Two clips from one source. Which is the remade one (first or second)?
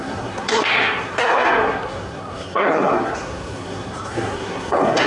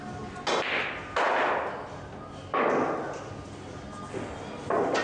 first